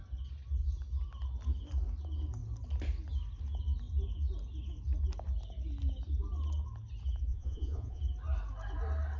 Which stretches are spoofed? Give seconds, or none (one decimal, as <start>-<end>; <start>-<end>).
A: 7.3-8.0